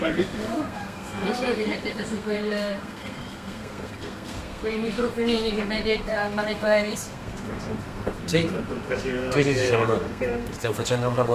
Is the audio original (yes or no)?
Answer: no